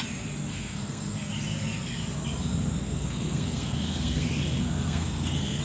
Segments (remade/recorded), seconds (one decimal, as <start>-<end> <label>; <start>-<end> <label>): 0.0-0.5 recorded; 0.5-1.3 remade; 1.3-2.8 recorded; 2.8-5.6 remade